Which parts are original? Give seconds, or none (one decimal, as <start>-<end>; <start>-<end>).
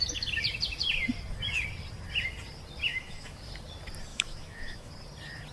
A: 0.0-2.9; 3.4-4.1; 4.9-5.5